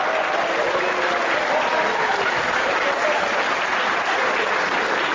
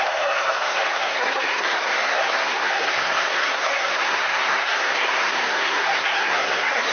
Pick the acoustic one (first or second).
first